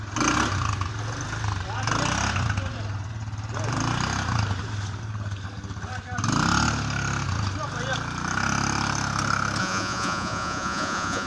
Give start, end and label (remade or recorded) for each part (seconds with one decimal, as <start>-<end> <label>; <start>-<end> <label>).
0.0-9.6 recorded; 9.6-11.3 remade